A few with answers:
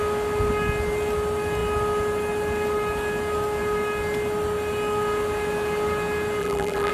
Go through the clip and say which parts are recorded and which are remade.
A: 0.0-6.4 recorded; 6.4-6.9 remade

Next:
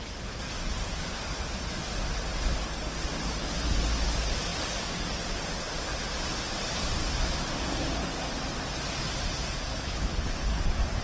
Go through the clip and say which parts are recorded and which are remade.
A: 0.0-9.7 recorded; 9.7-10.6 remade; 10.6-11.0 recorded

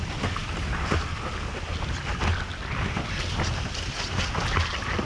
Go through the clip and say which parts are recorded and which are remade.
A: 0.0-5.1 recorded

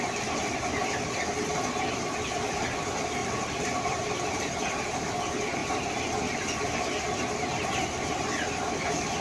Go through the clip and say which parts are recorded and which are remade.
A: 0.0-3.2 recorded; 3.2-4.7 remade; 4.7-9.2 recorded

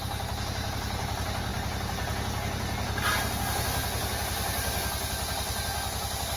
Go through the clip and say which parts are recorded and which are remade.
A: 0.0-6.4 recorded

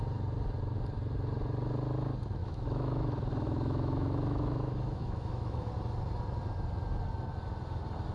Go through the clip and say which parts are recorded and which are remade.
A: 0.0-2.4 recorded; 2.4-5.7 remade; 5.7-8.1 recorded

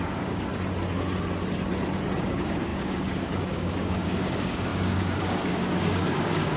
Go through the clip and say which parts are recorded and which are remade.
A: 0.0-0.5 remade; 0.5-2.2 recorded; 2.2-6.6 remade

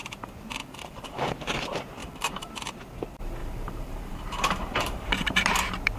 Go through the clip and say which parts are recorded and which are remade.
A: 0.0-0.6 recorded; 0.6-1.3 remade; 1.3-2.0 recorded; 2.0-2.5 remade; 2.5-3.4 recorded; 3.4-5.4 remade; 5.4-6.0 recorded